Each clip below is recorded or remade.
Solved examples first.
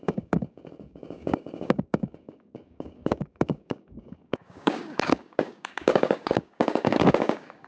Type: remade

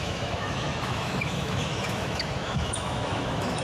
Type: remade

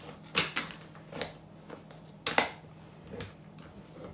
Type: recorded